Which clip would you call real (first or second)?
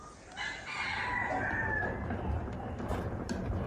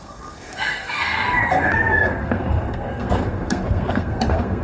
first